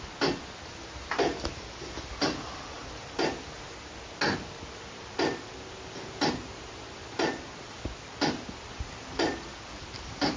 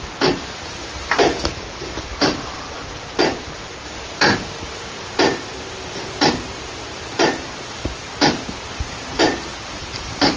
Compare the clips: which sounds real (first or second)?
first